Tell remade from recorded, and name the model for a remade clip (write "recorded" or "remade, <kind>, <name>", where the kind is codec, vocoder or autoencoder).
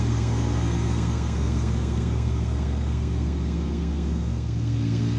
remade, codec, SNAC